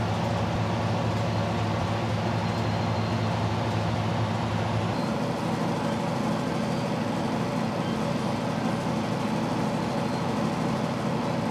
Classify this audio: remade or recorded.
recorded